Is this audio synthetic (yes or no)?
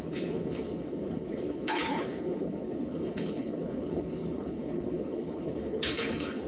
yes